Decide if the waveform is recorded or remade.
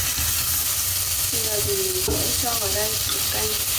recorded